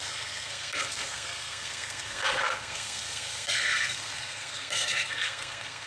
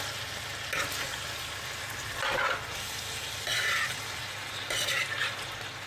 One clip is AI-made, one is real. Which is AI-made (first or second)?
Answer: first